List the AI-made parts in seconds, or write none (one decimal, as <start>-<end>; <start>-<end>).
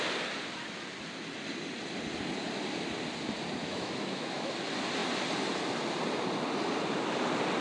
3.6-4.5